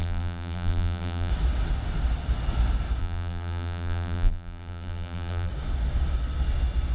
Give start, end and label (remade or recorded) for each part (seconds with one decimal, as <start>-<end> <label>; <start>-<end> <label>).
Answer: 0.0-1.3 remade; 1.3-3.0 recorded; 3.0-5.5 remade; 5.5-6.9 recorded